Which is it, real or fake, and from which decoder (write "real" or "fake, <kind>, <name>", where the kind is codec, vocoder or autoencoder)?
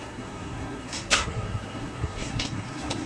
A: fake, codec, SNAC